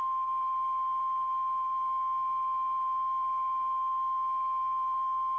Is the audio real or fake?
real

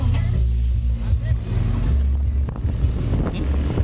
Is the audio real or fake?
real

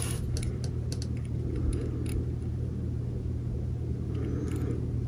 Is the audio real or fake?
real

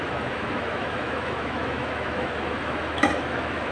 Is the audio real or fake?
fake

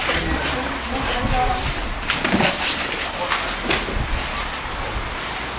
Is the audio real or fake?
real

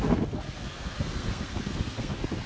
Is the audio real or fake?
fake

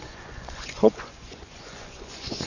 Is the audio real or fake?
fake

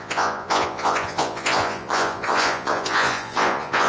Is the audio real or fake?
fake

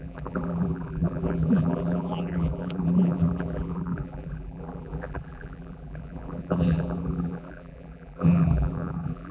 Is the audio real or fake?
fake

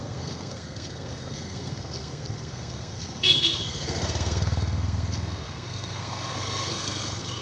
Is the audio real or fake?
fake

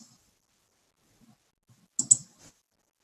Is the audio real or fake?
real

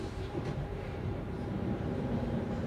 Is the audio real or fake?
fake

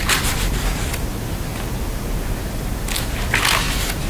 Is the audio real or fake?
real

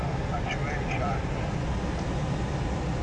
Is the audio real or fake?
real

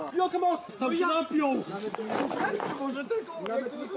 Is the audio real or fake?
real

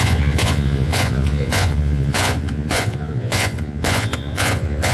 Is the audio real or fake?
fake